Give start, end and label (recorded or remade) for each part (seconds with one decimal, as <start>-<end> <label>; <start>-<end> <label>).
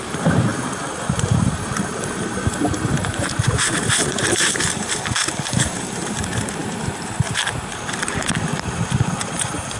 0.0-9.8 remade